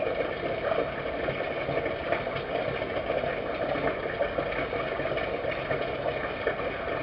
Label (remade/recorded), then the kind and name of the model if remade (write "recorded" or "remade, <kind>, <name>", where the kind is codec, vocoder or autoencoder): recorded